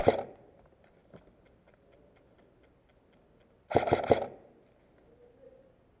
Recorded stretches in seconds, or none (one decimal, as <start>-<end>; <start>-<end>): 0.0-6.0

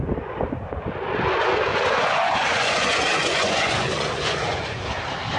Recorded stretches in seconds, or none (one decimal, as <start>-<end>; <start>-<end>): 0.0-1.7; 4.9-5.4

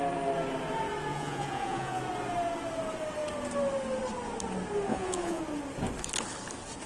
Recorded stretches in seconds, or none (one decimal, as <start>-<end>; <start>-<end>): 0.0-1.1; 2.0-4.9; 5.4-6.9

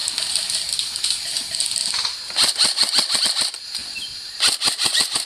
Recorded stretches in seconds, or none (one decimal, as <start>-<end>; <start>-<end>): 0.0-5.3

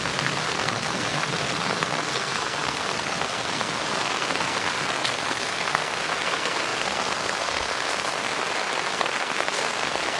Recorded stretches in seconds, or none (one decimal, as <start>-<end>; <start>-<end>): 8.3-8.9